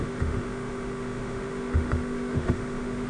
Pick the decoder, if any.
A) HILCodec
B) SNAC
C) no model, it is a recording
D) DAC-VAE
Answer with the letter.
D